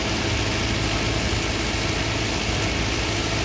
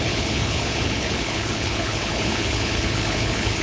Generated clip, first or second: second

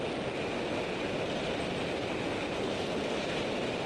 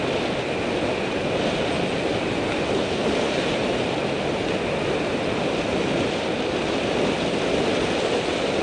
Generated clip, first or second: second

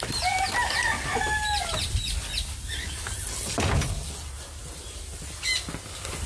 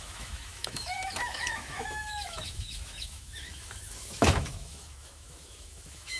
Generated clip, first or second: second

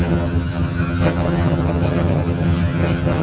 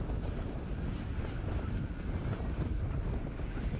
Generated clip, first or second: first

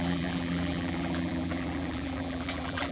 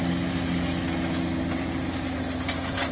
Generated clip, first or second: first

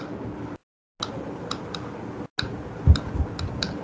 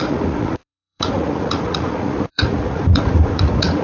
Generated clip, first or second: second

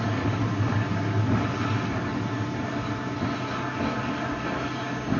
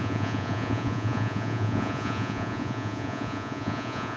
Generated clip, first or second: second